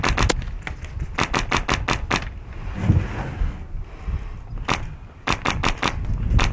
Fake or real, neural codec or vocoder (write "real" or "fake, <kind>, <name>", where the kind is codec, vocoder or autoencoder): real